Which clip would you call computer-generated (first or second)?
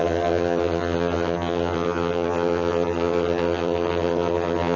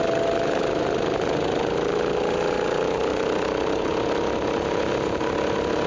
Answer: first